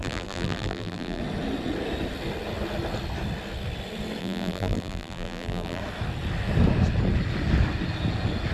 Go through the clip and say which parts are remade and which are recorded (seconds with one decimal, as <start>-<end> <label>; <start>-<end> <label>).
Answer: 0.0-1.2 remade; 1.2-4.2 recorded; 4.2-5.8 remade; 5.8-8.5 recorded

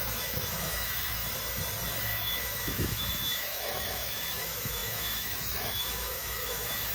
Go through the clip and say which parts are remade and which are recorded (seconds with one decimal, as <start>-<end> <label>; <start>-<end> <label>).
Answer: 0.0-1.2 remade; 1.2-2.1 recorded; 2.1-6.9 remade

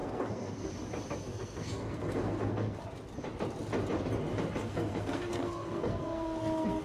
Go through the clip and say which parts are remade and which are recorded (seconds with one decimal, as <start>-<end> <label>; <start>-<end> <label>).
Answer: 0.0-0.7 remade; 0.7-1.3 recorded; 1.3-2.8 remade; 2.8-4.6 recorded; 4.6-6.8 remade

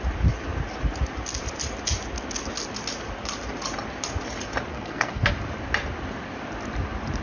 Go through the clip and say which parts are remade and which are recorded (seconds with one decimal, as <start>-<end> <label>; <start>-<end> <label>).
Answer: 0.0-4.7 recorded; 4.7-5.3 remade; 5.3-7.2 recorded

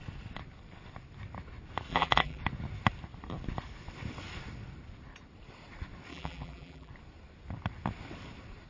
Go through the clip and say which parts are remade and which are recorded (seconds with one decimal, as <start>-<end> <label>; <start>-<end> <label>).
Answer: 0.0-1.9 recorded; 1.9-2.4 remade; 2.4-6.1 recorded; 6.1-6.9 remade; 6.9-8.7 recorded